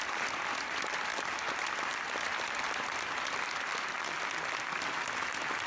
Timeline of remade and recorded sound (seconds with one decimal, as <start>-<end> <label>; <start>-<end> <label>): 0.0-5.7 remade